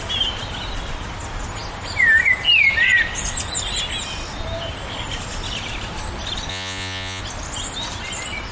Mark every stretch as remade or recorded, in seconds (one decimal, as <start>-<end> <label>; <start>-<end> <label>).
0.0-6.5 recorded; 6.5-7.2 remade; 7.2-8.5 recorded